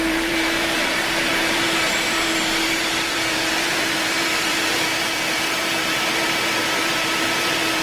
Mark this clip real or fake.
fake